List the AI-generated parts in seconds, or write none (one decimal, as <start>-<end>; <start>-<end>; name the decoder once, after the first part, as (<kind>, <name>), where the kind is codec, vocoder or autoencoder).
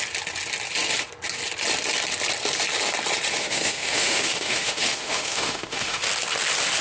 3.4-6.0 (autoencoder, DAC-VAE)